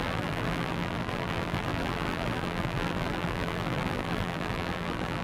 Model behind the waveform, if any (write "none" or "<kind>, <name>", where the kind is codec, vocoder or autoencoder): vocoder, BigVGAN v2